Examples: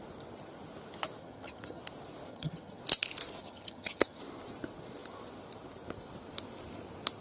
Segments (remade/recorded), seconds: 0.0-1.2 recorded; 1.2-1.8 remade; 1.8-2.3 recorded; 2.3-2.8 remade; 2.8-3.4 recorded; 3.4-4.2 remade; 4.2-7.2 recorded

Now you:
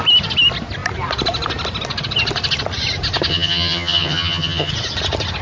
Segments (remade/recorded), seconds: 0.0-3.3 recorded; 3.3-4.7 remade; 4.7-5.4 recorded

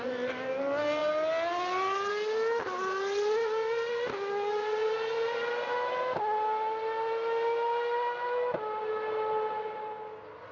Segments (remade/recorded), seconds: 0.0-10.5 recorded

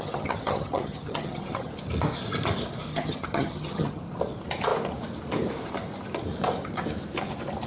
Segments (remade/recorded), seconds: 0.0-1.7 remade; 1.7-2.9 recorded; 2.9-4.0 remade; 4.0-7.7 recorded